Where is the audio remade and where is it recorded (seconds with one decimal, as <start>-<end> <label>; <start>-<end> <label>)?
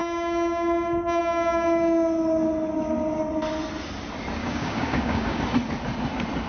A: 0.0-4.4 recorded; 4.4-5.4 remade; 5.4-6.5 recorded